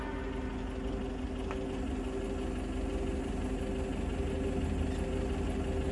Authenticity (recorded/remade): recorded